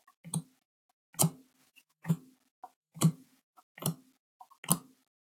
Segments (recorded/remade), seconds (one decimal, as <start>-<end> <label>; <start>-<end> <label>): 0.0-1.6 recorded; 1.6-2.1 remade; 2.1-2.8 recorded; 2.8-3.6 remade; 3.6-5.3 recorded